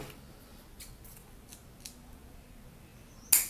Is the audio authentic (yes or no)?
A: yes